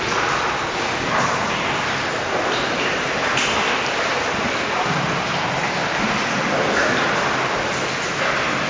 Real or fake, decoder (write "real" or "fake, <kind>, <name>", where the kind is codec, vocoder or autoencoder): real